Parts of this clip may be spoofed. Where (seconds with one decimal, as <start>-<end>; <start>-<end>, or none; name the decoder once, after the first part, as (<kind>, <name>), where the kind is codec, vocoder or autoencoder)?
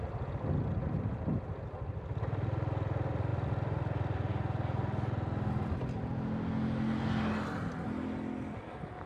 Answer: 3.3-4.3 (vocoder, BigVGAN v2)